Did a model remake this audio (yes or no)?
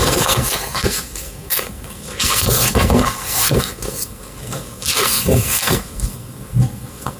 yes